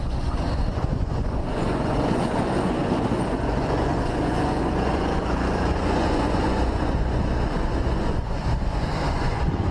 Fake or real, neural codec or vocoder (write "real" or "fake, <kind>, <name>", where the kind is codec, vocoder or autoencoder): fake, vocoder, Vocos